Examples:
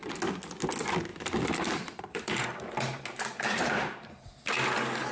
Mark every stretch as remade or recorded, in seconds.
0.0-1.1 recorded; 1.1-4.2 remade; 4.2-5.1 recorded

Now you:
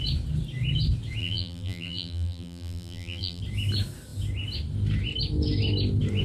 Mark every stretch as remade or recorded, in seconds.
0.0-1.2 recorded; 1.2-3.4 remade; 3.4-6.2 recorded

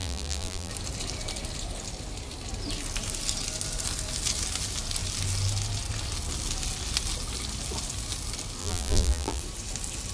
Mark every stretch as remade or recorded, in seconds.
0.0-0.7 remade; 0.7-8.6 recorded; 8.6-9.4 remade; 9.4-10.1 recorded

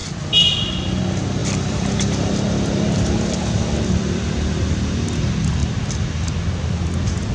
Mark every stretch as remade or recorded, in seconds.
0.0-1.4 recorded; 1.4-4.7 remade; 4.7-7.3 recorded

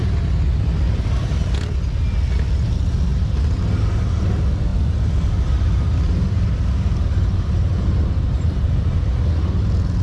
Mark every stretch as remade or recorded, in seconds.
0.0-3.1 recorded; 3.1-4.2 remade; 4.2-4.7 recorded; 4.7-9.1 remade; 9.1-10.0 recorded

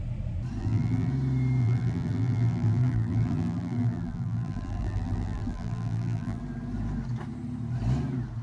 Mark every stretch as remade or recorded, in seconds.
0.0-0.6 recorded; 0.6-1.1 remade; 1.1-1.6 recorded; 1.6-6.4 remade; 6.4-8.4 recorded